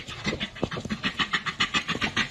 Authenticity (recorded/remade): recorded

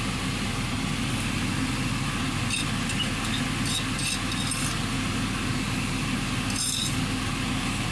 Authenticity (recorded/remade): recorded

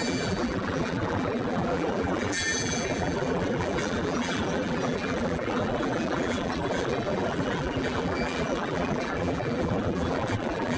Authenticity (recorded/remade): remade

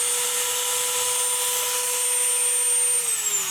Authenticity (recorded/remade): recorded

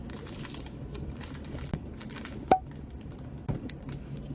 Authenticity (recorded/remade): recorded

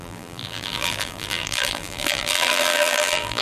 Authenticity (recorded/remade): remade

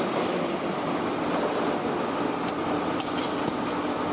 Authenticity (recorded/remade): recorded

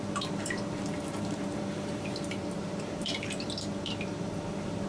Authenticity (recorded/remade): remade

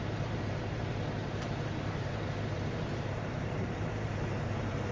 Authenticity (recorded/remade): remade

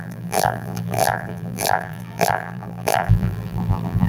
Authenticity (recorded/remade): remade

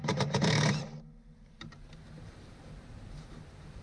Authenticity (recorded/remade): remade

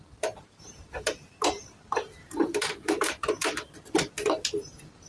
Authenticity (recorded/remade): remade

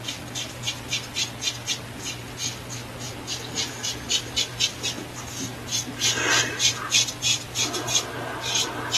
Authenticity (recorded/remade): recorded